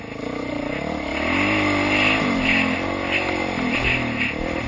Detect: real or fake real